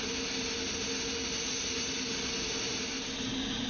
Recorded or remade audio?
recorded